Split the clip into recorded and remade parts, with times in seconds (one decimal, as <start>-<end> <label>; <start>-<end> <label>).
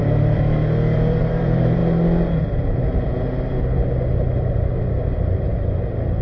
0.0-1.8 remade; 1.8-2.5 recorded; 2.5-3.1 remade; 3.1-4.1 recorded; 4.1-6.2 remade